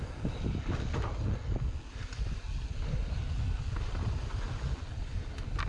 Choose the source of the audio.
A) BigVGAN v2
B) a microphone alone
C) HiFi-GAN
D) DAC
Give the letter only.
B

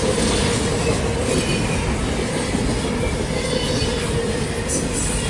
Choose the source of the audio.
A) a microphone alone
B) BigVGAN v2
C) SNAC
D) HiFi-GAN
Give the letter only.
A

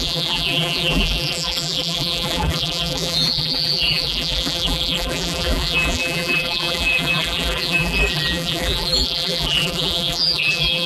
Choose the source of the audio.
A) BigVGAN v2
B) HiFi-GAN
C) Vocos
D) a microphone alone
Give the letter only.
A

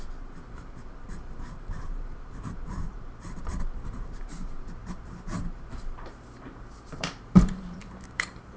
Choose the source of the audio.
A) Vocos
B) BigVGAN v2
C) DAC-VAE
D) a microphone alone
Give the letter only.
B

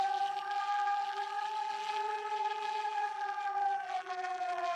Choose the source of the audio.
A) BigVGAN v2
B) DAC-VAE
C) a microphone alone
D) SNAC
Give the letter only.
A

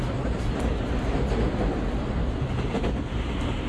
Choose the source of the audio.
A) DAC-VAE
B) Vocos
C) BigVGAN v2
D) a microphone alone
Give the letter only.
D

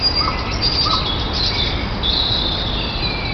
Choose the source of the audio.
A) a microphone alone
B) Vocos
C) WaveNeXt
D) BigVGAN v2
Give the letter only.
A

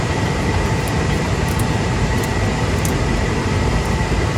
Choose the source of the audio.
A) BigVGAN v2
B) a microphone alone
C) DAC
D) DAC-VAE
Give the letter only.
A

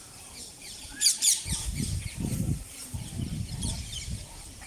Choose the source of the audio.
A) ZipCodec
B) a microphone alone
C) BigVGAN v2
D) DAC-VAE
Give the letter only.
C